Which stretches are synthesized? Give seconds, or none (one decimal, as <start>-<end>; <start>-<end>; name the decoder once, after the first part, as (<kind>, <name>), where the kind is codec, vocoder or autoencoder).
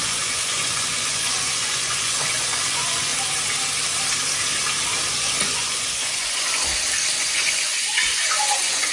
0.0-3.1 (vocoder, Vocos); 5.1-6.7; 7.2-8.9